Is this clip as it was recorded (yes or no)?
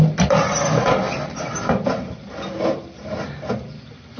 yes